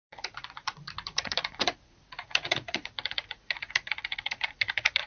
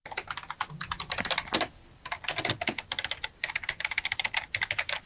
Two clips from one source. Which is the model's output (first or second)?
first